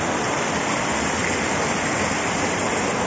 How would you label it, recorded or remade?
recorded